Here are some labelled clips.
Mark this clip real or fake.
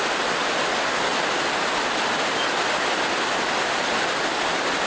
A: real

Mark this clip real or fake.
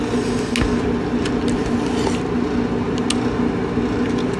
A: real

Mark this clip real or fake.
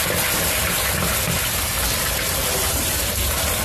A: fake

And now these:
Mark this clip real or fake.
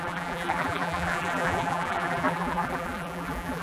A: fake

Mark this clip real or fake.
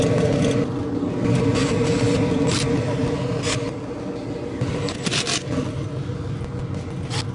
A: real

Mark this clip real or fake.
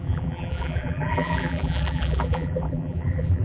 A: fake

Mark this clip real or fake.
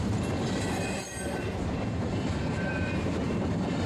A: fake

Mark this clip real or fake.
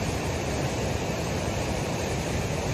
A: fake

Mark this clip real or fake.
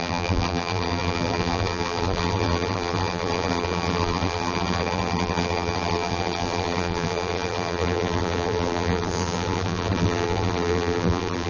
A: fake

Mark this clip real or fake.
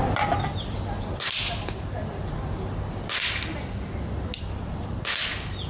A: real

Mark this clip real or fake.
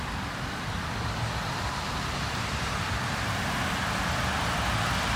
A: fake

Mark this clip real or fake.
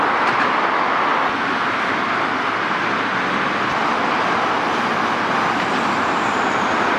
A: real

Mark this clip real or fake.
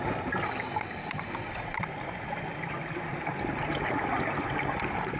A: real